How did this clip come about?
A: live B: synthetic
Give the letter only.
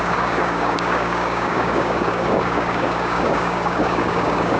B